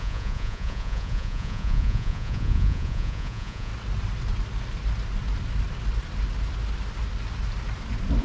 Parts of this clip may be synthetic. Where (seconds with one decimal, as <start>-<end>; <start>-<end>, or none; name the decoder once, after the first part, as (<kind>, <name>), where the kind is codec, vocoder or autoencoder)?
0.0-3.7 (vocoder, Vocos)